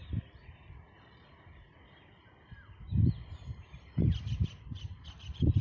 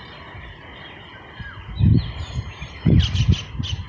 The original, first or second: second